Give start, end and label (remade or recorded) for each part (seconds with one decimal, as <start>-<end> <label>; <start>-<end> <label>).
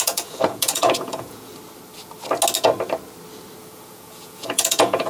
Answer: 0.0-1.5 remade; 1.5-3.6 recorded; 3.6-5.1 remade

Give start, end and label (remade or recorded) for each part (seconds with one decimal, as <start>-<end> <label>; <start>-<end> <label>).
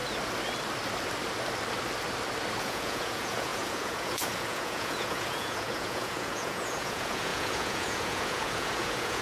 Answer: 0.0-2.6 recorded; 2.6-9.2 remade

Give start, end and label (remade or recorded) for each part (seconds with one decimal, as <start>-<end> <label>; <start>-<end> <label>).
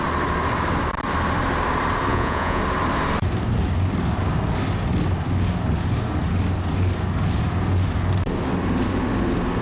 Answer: 0.0-2.1 recorded; 2.1-2.6 remade; 2.6-9.6 recorded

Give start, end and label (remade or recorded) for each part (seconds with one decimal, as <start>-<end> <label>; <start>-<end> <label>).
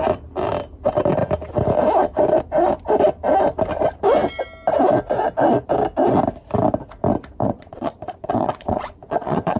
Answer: 0.0-7.4 recorded; 7.4-9.6 remade